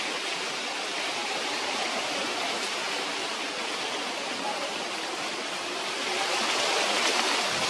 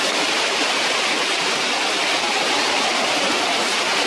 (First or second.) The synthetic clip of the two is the first